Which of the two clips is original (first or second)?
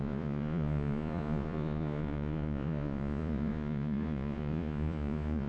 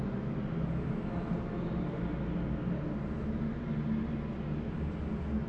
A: second